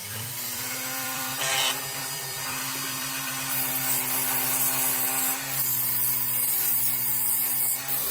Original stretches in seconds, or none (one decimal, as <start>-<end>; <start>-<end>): 3.4-8.1